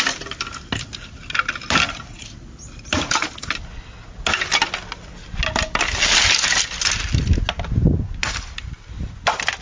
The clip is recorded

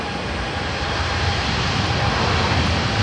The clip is recorded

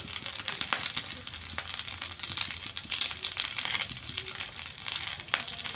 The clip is remade